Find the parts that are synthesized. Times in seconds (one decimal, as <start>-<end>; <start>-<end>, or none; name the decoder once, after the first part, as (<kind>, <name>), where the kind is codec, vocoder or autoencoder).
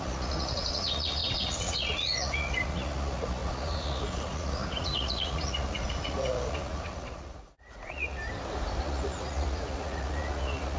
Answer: 0.0-8.2 (vocoder, Vocos); 8.8-10.8